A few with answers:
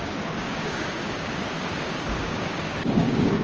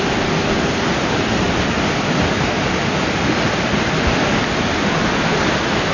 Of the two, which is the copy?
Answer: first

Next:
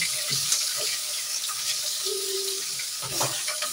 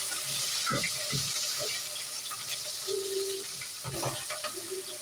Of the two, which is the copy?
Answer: first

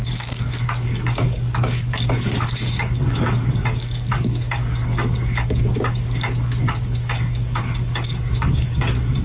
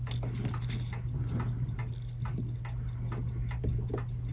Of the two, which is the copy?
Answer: first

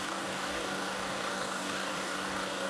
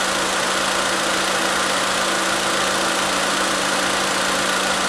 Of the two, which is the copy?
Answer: first